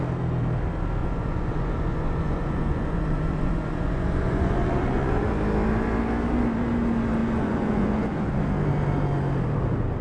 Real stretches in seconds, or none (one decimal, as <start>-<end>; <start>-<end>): 0.0-1.0; 5.3-7.2; 8.4-10.0